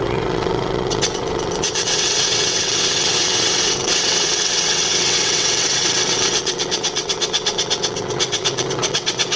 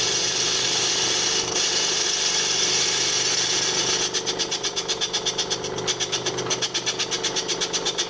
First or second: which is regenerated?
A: first